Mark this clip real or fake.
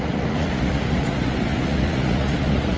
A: fake